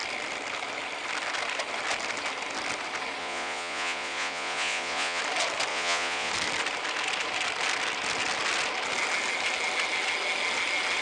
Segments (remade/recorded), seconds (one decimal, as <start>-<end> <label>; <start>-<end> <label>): 0.0-3.2 recorded; 3.2-5.2 remade; 5.2-5.7 recorded; 5.7-6.3 remade; 6.3-11.0 recorded